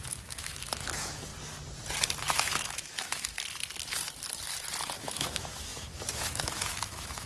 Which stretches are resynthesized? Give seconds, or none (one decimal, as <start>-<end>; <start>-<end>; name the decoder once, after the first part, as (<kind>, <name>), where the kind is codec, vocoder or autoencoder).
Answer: 0.0-1.3 (autoencoder, DAC-VAE); 2.3-3.3; 5.0-7.3